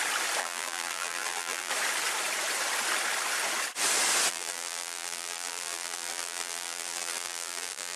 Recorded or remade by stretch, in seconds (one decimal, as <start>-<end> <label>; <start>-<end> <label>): 0.0-0.4 recorded; 0.4-1.7 remade; 1.7-4.3 recorded; 4.3-8.0 remade